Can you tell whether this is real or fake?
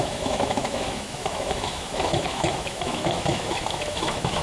fake